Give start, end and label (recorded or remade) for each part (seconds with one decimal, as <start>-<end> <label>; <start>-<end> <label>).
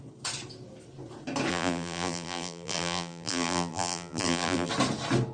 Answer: 0.0-1.5 recorded; 1.5-4.7 remade; 4.7-5.3 recorded